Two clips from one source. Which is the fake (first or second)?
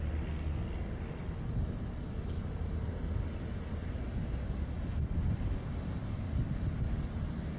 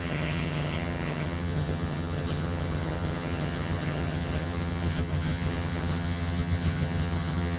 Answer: second